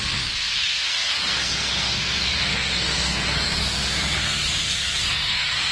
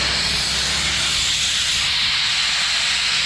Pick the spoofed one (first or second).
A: first